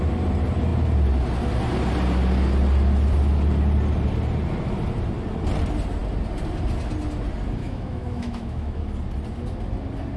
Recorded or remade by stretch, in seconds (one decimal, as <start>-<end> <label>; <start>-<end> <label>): 0.0-7.6 recorded; 7.6-8.8 remade; 8.8-10.2 recorded

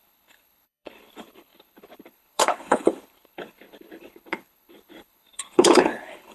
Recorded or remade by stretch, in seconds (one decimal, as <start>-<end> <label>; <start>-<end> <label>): 0.0-6.3 remade

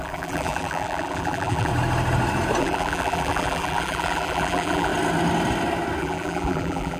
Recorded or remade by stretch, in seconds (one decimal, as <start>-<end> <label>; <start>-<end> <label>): 0.0-1.7 remade; 1.7-2.6 recorded; 2.6-4.9 remade; 4.9-6.0 recorded; 6.0-7.0 remade

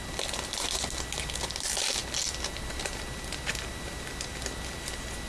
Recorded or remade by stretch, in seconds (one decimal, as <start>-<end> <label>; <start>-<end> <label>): 0.0-5.3 recorded

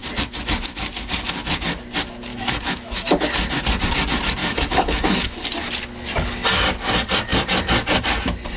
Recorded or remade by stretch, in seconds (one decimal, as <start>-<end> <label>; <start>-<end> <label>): 0.0-2.3 recorded; 2.3-3.2 remade; 3.2-4.4 recorded; 4.4-5.4 remade; 5.4-8.6 recorded

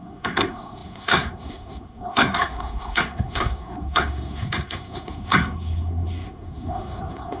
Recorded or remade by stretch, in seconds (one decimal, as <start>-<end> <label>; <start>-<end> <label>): 0.0-7.4 remade